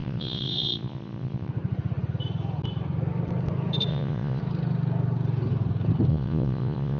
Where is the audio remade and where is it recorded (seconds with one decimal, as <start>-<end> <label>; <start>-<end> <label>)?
0.0-1.5 remade; 1.5-3.9 recorded; 3.9-4.4 remade; 4.4-6.1 recorded; 6.1-7.0 remade